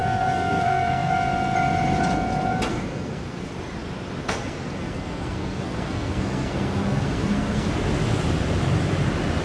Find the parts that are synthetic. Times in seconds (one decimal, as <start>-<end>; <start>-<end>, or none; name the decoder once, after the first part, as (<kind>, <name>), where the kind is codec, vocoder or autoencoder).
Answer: 0.0-1.1 (codec, SNAC); 2.7-3.5; 4.2-7.7